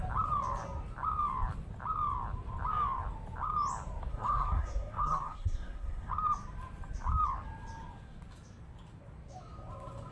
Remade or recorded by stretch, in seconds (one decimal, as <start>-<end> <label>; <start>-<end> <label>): 0.0-4.1 recorded; 4.1-6.1 remade; 6.1-10.1 recorded